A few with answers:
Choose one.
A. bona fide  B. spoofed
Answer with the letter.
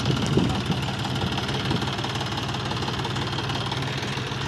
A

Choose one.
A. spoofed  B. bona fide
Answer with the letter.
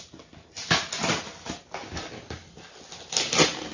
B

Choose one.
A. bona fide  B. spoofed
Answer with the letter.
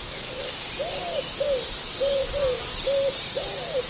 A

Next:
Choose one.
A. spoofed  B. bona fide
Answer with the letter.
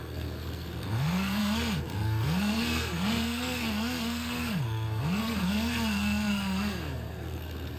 A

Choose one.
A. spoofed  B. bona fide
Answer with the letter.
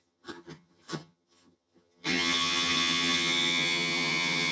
A